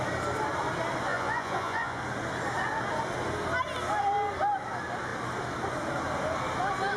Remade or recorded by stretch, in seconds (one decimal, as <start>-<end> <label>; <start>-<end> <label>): 0.0-1.1 recorded; 1.1-2.0 remade; 2.0-7.0 recorded